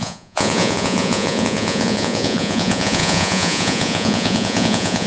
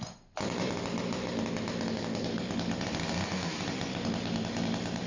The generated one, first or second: first